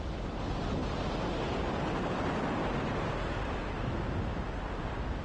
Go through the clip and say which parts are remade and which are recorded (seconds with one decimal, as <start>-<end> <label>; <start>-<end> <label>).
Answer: 0.0-5.2 recorded